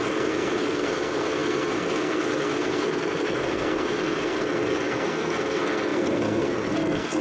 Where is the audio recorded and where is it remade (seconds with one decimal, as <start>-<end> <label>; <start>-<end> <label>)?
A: 0.0-7.2 remade